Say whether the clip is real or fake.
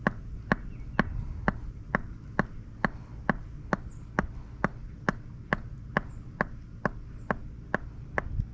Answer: real